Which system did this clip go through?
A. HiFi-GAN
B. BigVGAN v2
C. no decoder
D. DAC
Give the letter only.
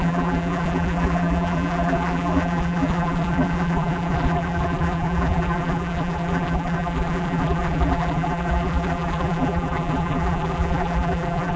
B